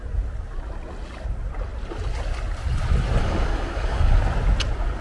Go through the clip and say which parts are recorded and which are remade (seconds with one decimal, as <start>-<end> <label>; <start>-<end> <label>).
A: 0.0-3.2 recorded; 3.2-4.2 remade; 4.2-5.0 recorded